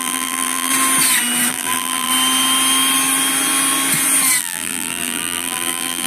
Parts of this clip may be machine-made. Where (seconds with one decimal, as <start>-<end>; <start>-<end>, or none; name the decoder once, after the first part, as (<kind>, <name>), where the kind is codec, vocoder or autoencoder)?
0.0-0.7 (vocoder, BigVGAN v2); 1.5-2.1; 4.4-6.1